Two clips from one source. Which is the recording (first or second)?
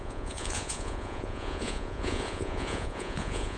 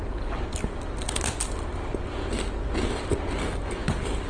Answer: second